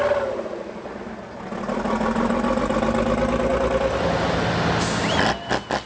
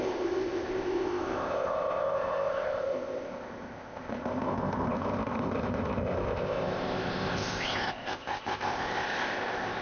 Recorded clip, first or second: first